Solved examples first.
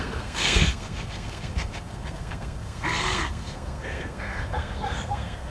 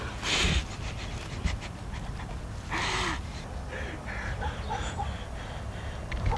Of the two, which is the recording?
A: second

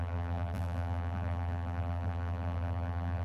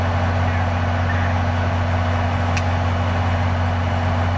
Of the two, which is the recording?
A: second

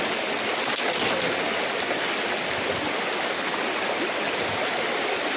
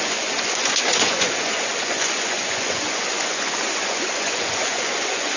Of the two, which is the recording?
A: first